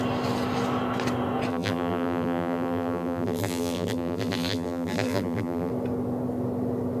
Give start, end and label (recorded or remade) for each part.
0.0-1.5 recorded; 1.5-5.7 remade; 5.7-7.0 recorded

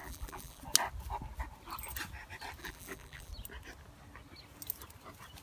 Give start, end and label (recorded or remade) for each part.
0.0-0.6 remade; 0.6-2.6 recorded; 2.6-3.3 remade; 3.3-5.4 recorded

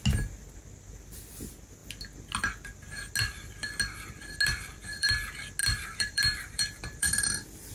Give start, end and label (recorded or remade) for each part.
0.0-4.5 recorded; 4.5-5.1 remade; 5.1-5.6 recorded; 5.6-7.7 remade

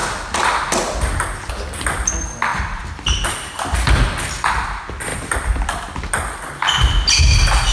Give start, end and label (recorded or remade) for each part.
0.0-2.5 recorded; 2.5-4.0 remade; 4.0-7.7 recorded

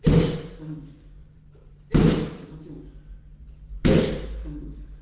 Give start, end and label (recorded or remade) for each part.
0.0-1.2 recorded; 1.2-2.5 remade; 2.5-5.0 recorded

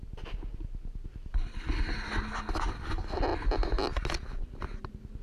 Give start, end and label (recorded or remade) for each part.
0.0-5.2 recorded

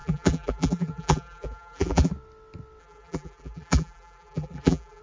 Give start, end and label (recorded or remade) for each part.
0.0-2.1 remade; 2.1-2.8 recorded; 2.8-5.0 remade